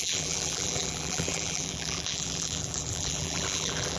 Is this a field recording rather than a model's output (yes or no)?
no